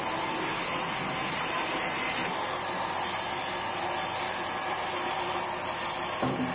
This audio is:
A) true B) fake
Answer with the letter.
A